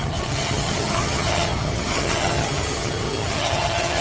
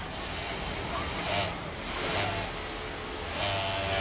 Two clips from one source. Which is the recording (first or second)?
second